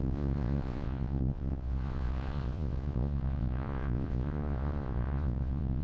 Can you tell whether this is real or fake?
fake